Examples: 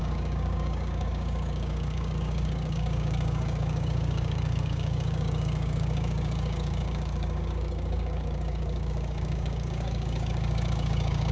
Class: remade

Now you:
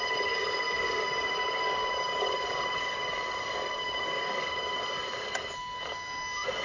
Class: remade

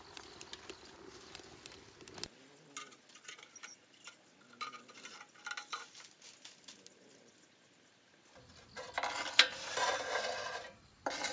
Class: recorded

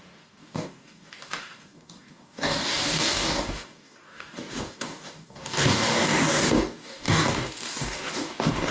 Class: remade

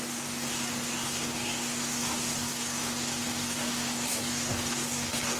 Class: remade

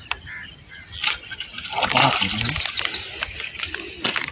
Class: recorded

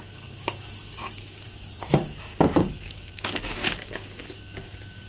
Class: remade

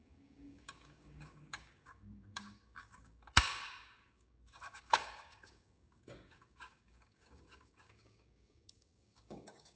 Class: remade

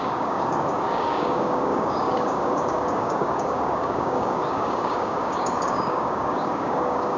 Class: remade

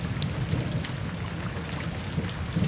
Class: recorded